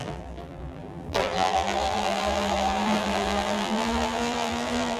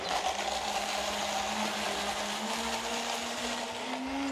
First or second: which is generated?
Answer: first